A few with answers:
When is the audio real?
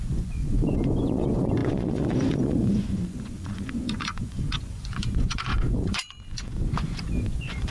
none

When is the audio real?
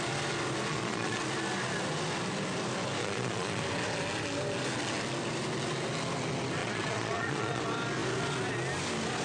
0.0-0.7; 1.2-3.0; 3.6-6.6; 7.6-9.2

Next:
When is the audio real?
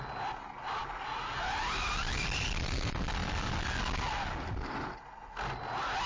0.0-6.1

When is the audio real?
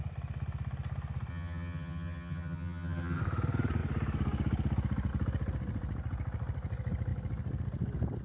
0.0-1.3; 3.2-8.2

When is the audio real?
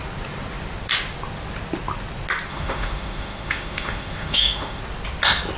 0.0-2.5; 4.8-5.6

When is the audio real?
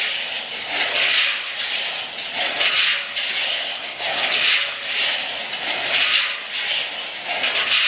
0.0-3.5; 4.3-7.9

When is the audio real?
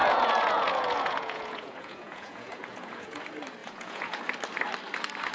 3.2-3.6; 4.2-5.3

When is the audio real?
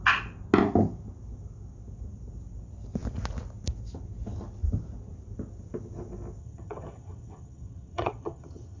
0.0-6.4